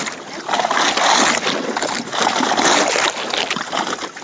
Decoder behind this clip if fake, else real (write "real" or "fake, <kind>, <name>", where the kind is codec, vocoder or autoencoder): real